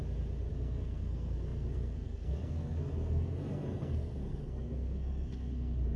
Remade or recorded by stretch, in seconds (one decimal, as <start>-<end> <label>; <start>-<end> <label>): 0.0-0.5 recorded; 0.5-6.0 remade